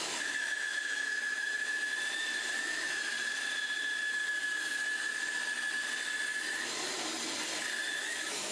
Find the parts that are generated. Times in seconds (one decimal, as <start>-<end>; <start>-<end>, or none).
0.0-1.9; 2.6-3.1; 8.0-8.5